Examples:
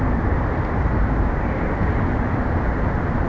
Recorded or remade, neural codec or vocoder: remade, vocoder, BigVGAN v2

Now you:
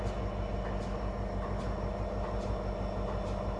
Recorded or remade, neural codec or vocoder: recorded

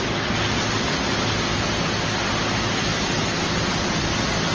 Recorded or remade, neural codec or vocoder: recorded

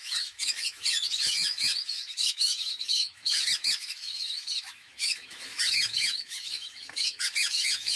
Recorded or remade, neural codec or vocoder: remade, autoencoder, DAC-VAE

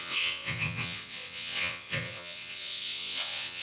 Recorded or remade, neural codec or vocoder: remade, vocoder, WaveNeXt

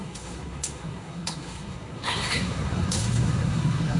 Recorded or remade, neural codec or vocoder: remade, codec, SNAC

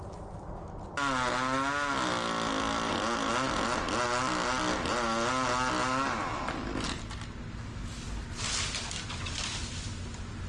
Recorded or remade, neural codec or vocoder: recorded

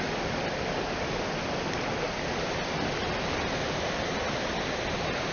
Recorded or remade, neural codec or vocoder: recorded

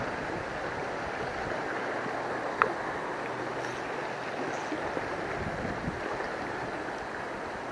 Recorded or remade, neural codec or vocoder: recorded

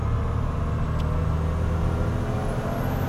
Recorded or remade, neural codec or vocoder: recorded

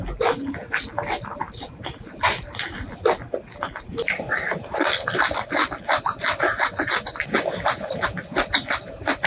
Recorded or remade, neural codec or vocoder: recorded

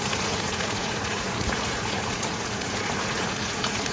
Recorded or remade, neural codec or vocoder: remade, vocoder, Vocos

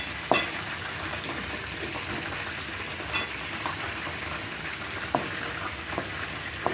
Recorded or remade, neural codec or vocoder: recorded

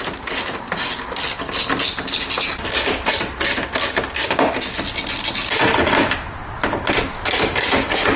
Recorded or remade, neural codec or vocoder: recorded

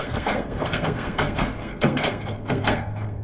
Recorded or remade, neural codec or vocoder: remade, codec, SNAC